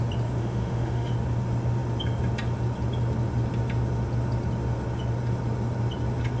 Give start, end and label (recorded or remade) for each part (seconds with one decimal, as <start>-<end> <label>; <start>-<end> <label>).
0.0-0.4 recorded; 0.4-1.1 remade; 1.1-6.4 recorded